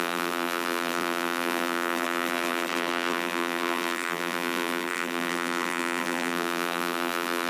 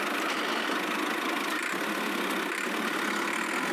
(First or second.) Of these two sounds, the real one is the second